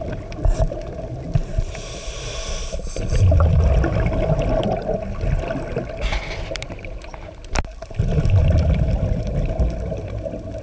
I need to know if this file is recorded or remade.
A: recorded